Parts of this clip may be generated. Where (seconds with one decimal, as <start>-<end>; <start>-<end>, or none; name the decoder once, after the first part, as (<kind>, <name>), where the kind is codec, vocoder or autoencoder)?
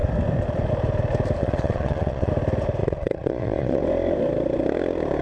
1.4-2.3 (vocoder, Vocos); 2.8-3.8